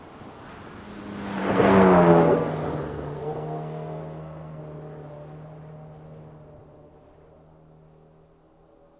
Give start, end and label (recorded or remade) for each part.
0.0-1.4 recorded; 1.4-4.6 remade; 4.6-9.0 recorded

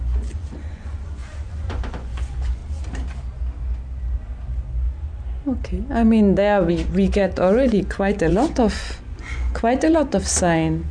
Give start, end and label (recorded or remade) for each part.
0.0-2.6 remade; 2.6-6.7 recorded; 6.7-10.1 remade; 10.1-10.9 recorded

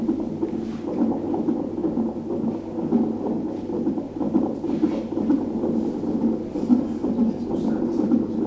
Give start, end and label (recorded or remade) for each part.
0.0-8.5 recorded